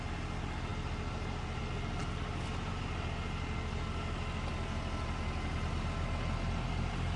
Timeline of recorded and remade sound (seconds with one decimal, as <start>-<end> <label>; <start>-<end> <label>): 0.0-7.2 recorded